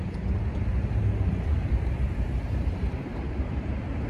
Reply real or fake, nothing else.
fake